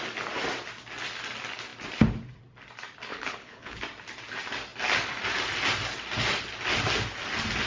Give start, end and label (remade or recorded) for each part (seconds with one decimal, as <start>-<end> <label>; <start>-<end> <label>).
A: 0.0-3.1 recorded; 3.1-3.8 remade; 3.8-7.7 recorded